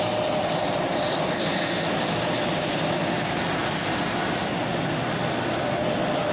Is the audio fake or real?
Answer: real